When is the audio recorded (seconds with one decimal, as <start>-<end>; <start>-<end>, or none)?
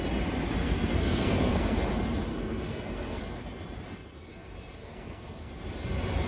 0.0-0.6; 1.9-2.3; 3.2-4.8; 5.5-6.3